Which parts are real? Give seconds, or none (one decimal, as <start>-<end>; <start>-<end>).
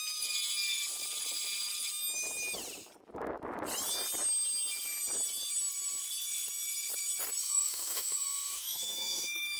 0.0-7.4